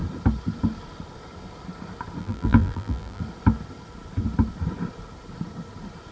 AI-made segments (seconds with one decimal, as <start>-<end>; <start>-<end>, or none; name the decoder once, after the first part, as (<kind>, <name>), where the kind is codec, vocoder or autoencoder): 2.2-3.2 (vocoder, BigVGAN v2)